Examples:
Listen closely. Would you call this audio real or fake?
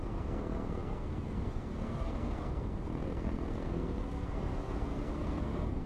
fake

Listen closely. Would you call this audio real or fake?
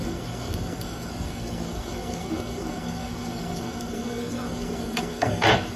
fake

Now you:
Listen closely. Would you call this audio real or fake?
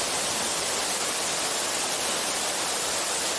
real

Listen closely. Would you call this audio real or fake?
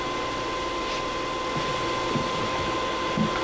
real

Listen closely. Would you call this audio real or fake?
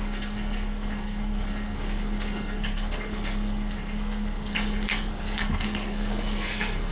fake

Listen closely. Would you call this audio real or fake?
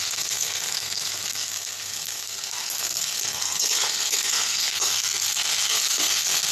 fake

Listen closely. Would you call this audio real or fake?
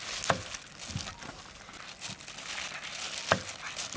real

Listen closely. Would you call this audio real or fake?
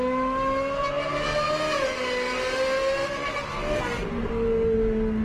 real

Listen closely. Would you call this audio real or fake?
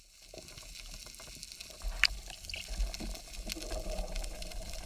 real